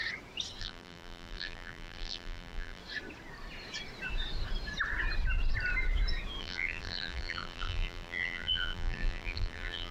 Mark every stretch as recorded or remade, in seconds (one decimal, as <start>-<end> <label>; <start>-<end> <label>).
0.0-0.6 recorded; 0.6-2.8 remade; 2.8-6.4 recorded; 6.4-9.9 remade

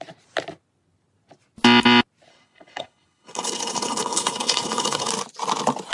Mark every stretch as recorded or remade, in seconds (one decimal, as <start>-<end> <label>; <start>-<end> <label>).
0.0-2.3 recorded; 2.3-5.1 remade; 5.1-5.9 recorded

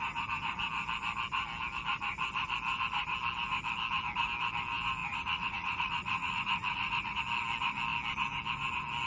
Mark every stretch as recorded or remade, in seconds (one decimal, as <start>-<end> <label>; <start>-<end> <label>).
0.0-5.0 recorded; 5.0-7.2 remade; 7.2-9.1 recorded

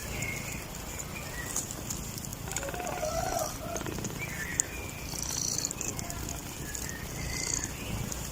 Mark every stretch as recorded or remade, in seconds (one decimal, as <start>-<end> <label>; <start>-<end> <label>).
0.0-2.3 recorded; 2.3-2.9 remade; 2.9-4.5 recorded; 4.5-5.3 remade; 5.3-8.3 recorded

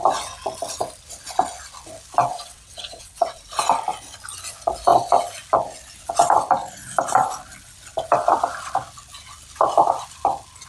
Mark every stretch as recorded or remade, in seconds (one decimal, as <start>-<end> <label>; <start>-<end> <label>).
0.0-2.3 recorded; 2.3-3.4 remade; 3.4-10.7 recorded

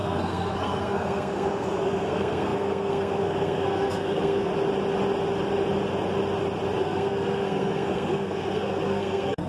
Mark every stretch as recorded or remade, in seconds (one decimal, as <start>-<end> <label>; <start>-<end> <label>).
0.0-4.5 remade; 4.5-6.8 recorded; 6.8-9.5 remade

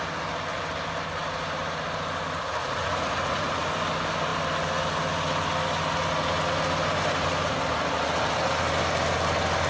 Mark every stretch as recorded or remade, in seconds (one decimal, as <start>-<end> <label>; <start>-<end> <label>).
0.0-2.6 recorded; 2.6-3.7 remade; 3.7-9.7 recorded